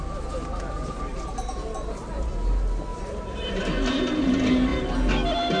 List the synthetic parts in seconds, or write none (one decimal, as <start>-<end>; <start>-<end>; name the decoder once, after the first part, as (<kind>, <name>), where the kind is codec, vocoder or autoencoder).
1.1-2.3 (vocoder, BigVGAN v2); 2.9-3.6